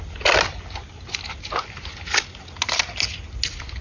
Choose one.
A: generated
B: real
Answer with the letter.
B